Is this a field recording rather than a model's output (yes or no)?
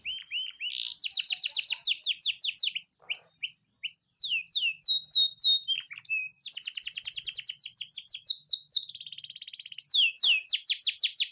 yes